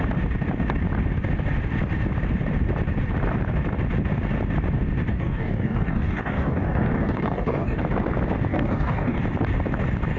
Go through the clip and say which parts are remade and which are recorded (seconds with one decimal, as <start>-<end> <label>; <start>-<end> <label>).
0.0-5.1 recorded; 5.1-7.8 remade; 7.8-8.5 recorded; 8.5-9.2 remade; 9.2-10.2 recorded

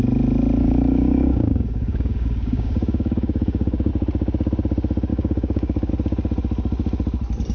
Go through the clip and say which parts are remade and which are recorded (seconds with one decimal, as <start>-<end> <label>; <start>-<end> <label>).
0.0-0.6 recorded; 0.6-3.9 remade; 3.9-5.1 recorded; 5.1-5.9 remade; 5.9-7.5 recorded

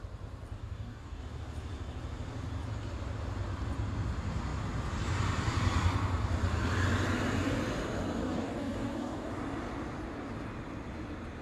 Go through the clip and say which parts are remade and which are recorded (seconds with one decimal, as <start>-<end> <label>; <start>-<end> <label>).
0.0-0.6 recorded; 0.6-1.2 remade; 1.2-8.2 recorded; 8.2-9.3 remade; 9.3-11.4 recorded

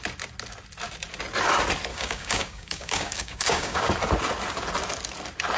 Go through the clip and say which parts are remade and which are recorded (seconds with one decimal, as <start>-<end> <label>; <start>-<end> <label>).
0.0-1.9 recorded; 1.9-3.9 remade; 3.9-5.6 recorded